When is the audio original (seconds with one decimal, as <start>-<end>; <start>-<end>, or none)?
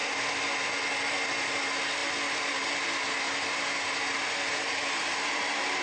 0.0-5.8